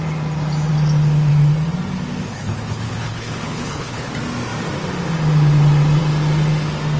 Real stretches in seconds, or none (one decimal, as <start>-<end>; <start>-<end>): 0.0-2.3; 4.1-7.0